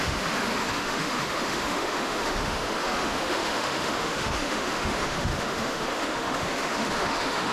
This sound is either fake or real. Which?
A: fake